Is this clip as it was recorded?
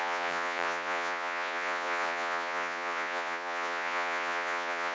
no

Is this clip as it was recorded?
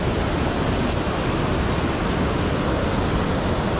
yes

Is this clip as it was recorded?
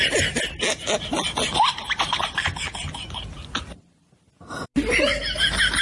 yes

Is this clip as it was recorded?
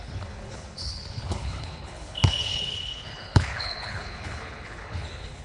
no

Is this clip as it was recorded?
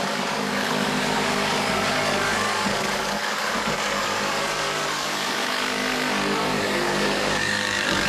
no